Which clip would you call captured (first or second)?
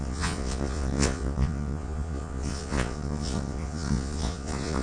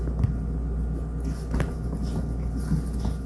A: second